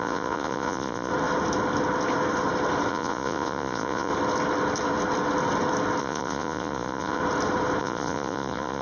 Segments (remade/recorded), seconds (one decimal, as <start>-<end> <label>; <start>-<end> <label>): 0.0-1.1 remade; 1.1-2.9 recorded; 2.9-4.1 remade; 4.1-6.0 recorded; 6.0-7.2 remade; 7.2-7.8 recorded; 7.8-8.8 remade